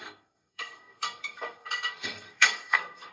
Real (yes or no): no